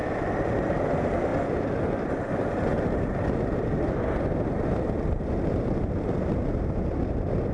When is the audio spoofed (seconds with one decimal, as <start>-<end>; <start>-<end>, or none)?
none

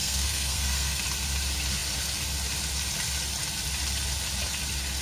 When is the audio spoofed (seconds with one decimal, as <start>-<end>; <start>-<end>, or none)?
0.0-1.0

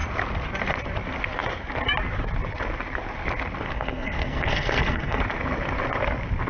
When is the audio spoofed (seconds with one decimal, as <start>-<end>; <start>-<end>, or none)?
3.7-5.2

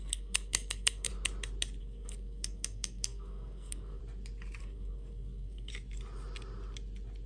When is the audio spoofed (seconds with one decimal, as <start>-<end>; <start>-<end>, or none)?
0.0-1.1; 1.8-4.0; 4.6-5.7

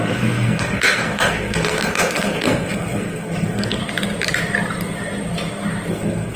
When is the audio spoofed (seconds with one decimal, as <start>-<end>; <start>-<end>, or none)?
0.0-3.8; 5.9-6.4